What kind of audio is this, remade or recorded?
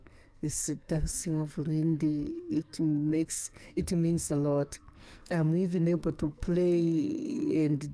remade